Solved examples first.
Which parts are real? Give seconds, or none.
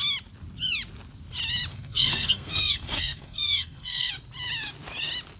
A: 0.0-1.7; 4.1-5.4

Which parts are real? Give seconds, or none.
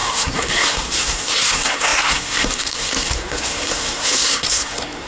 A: none